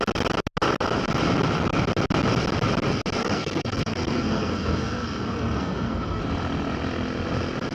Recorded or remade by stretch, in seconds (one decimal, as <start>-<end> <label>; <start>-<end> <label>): 0.0-3.2 recorded; 3.2-6.2 remade; 6.2-7.7 recorded